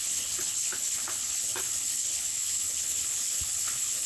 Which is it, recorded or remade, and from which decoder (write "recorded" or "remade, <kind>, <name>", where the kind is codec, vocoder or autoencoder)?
remade, codec, HILCodec